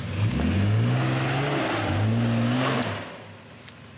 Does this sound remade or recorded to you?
recorded